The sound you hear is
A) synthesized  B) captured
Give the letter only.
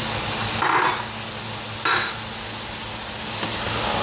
B